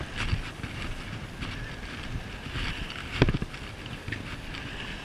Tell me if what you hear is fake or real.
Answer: real